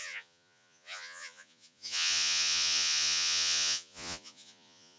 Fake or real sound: fake